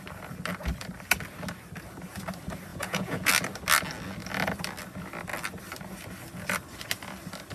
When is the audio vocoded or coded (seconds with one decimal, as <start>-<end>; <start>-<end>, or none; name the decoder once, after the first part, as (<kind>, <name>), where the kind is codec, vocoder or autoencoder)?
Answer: 2.7-3.3 (vocoder, Vocos)